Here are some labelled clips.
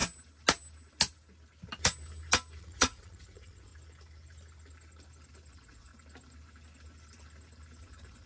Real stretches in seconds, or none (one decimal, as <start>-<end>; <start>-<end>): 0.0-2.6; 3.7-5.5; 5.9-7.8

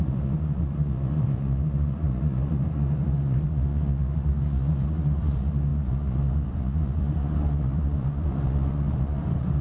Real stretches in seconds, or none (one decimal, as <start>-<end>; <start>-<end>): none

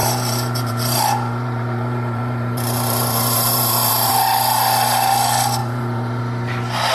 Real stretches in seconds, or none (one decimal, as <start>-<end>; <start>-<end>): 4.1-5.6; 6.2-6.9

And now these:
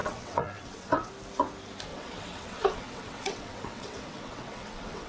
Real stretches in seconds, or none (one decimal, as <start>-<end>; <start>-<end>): 1.1-1.9

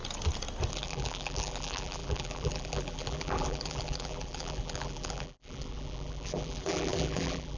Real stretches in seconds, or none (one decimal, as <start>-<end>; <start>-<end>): 0.0-0.7

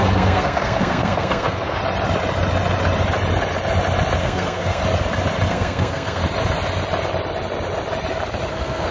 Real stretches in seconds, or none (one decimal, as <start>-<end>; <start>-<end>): 1.8-4.2; 4.8-5.5; 6.2-8.5